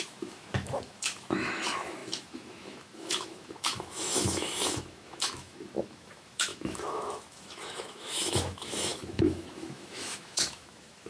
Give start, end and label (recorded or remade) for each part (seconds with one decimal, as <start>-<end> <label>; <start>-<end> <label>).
0.0-11.1 remade

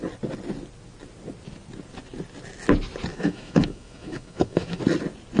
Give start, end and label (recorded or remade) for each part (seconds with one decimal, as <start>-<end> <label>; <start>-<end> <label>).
0.0-3.1 recorded; 3.1-4.8 remade; 4.8-5.4 recorded

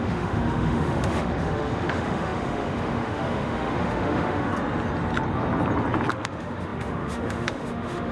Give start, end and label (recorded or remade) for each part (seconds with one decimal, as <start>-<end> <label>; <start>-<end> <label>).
0.0-4.5 remade; 4.5-6.1 recorded; 6.1-8.1 remade